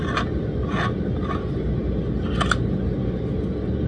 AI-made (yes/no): no